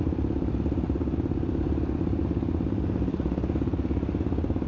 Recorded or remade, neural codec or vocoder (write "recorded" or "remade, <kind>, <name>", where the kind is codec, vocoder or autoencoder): recorded